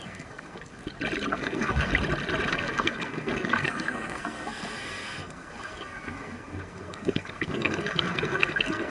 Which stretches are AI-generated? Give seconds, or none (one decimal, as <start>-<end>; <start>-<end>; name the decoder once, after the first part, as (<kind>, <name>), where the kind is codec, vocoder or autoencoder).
0.0-0.8 (codec, SNAC); 1.3-1.9; 2.5-8.9